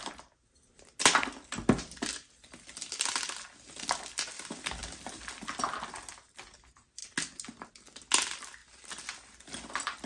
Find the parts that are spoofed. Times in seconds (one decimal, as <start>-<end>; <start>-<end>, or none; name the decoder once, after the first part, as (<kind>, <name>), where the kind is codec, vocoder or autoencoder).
none